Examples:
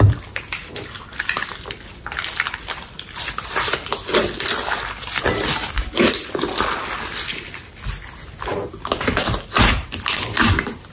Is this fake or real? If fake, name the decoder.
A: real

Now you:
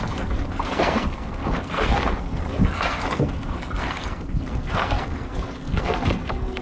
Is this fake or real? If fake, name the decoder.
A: fake, codec, SNAC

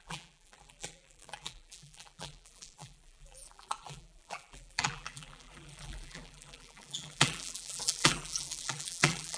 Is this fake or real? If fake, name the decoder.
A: fake, vocoder, BigVGAN v2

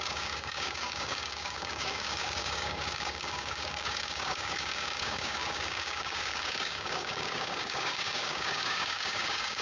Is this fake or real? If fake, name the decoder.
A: fake, codec, DAC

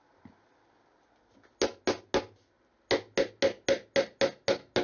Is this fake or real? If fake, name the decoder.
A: real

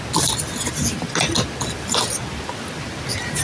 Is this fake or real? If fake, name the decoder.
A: real